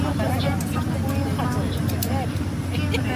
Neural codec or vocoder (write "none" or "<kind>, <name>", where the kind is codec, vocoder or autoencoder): none